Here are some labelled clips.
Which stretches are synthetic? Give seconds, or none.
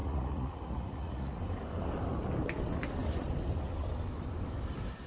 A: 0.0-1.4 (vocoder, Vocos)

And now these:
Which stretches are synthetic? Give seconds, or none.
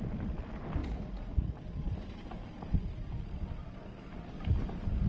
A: 0.8-1.6 (vocoder, Vocos)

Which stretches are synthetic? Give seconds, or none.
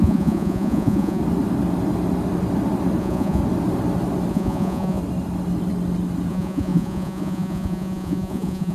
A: 0.0-1.2 (vocoder, Vocos); 3.0-3.4; 4.3-5.0; 6.3-8.7